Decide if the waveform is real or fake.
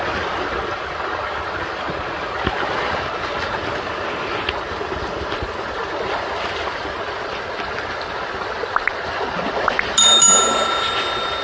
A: real